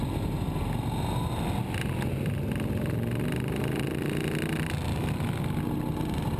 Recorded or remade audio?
recorded